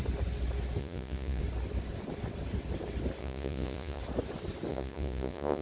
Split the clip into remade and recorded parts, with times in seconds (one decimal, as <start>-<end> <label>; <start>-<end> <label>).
0.0-0.8 recorded; 0.8-1.4 remade; 1.4-3.2 recorded; 3.2-4.0 remade; 4.0-4.7 recorded; 4.7-5.6 remade